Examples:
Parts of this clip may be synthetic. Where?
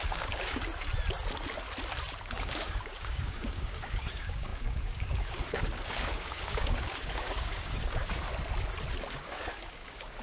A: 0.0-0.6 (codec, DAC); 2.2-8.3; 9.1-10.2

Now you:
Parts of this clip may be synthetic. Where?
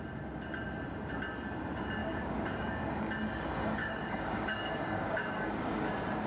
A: 2.0-2.8 (codec, DAC); 3.8-5.8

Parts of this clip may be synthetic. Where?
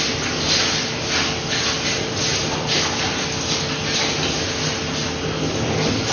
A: none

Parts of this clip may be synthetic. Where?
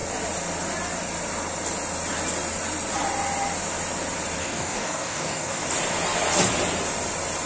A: 4.4-5.6 (codec, DAC)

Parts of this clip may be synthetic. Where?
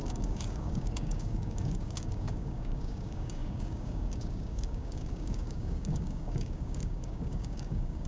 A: 0.0-8.1 (codec, DAC)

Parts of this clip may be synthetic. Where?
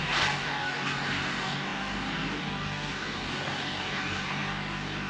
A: 0.0-5.1 (codec, DAC)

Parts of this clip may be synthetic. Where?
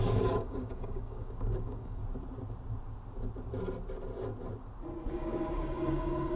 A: 0.0-2.0 (codec, DAC); 5.1-6.4